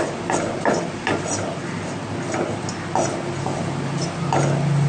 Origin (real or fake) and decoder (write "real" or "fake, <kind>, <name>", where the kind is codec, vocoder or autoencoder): real